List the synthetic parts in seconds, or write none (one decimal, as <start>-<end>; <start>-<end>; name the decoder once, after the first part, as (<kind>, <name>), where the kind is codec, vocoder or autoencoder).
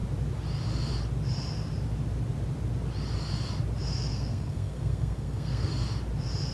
4.1-5.7 (codec, SNAC)